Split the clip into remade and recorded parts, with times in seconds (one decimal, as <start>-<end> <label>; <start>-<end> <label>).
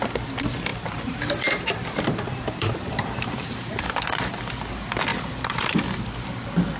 0.0-0.7 recorded; 0.7-4.3 remade; 4.3-5.1 recorded; 5.1-5.8 remade; 5.8-6.8 recorded